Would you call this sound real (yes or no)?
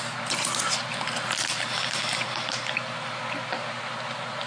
yes